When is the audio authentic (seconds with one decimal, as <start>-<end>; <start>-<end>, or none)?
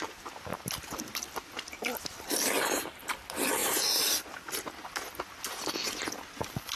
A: 0.0-6.8